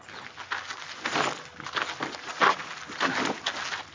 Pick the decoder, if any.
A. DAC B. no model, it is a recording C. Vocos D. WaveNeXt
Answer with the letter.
B